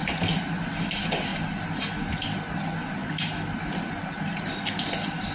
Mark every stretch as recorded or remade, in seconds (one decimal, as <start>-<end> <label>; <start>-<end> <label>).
0.0-5.3 recorded